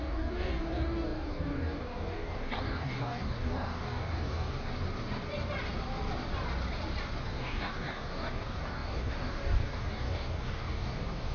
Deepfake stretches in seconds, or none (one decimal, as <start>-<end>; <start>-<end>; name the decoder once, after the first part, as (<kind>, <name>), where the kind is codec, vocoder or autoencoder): 0.0-4.7 (codec, DAC); 7.2-11.3